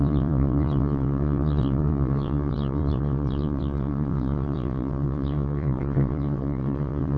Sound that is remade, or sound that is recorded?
remade